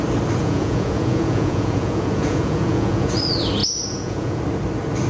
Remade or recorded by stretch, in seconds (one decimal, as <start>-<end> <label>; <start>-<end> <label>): 0.0-0.4 recorded; 0.4-3.1 remade; 3.1-3.6 recorded; 3.6-4.4 remade; 4.4-5.1 recorded